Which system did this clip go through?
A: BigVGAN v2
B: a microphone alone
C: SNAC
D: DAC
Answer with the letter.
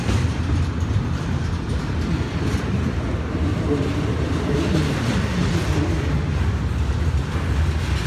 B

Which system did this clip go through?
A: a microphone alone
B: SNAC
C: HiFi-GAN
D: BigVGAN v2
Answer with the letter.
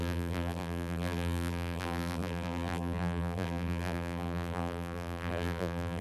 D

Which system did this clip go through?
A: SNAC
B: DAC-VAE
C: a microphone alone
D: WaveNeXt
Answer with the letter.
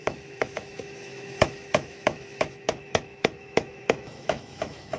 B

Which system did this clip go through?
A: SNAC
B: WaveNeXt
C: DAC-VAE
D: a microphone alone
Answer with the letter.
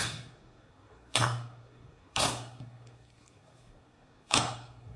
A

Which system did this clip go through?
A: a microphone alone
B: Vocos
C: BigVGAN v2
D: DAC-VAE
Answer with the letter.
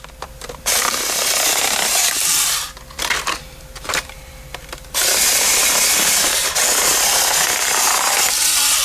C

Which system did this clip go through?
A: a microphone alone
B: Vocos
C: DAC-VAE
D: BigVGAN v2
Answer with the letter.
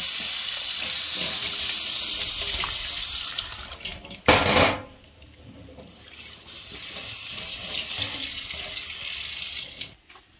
A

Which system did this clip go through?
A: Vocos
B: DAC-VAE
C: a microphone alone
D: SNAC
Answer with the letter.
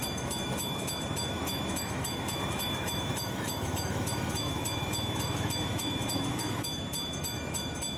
B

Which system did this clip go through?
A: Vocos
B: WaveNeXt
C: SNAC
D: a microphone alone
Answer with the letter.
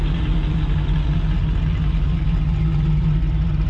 D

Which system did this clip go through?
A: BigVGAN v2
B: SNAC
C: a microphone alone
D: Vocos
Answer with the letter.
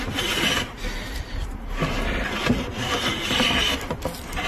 C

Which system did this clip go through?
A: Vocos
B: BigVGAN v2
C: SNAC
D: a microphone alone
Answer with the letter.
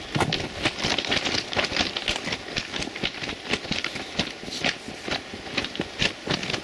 D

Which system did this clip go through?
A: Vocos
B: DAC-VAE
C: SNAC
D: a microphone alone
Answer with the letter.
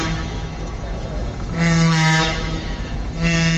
B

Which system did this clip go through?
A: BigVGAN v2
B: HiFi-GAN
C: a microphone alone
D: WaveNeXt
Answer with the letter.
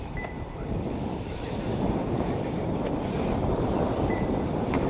A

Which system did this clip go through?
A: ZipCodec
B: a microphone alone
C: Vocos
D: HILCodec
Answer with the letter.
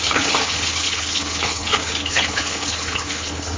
D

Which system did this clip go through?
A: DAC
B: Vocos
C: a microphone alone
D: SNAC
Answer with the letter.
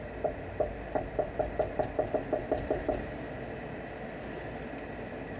C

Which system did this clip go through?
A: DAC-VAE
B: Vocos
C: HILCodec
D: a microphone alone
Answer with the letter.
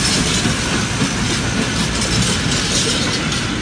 D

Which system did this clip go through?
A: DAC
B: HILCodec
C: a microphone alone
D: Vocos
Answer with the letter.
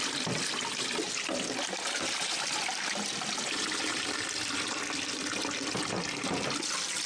C